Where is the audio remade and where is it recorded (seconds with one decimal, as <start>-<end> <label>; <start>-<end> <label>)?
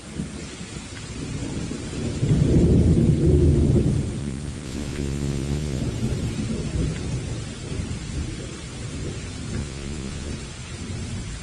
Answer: 0.0-4.2 recorded; 4.2-5.8 remade; 5.8-9.6 recorded; 9.6-10.3 remade; 10.3-11.4 recorded